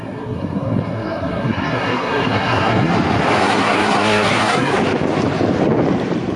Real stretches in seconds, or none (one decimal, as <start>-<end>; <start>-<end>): 2.9-3.4; 4.7-6.4